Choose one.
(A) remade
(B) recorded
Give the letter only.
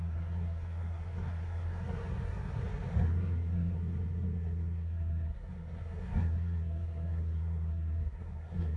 A